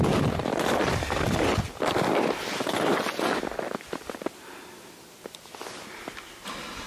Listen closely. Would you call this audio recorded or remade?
recorded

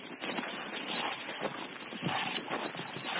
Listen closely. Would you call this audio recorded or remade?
recorded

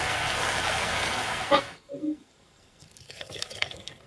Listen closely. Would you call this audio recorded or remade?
remade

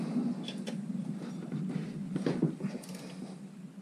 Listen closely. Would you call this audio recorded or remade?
recorded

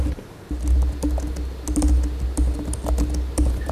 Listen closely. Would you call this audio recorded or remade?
recorded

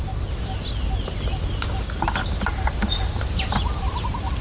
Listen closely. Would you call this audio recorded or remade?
recorded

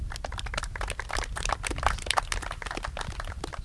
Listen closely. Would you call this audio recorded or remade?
recorded